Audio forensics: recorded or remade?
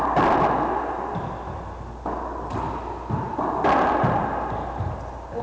recorded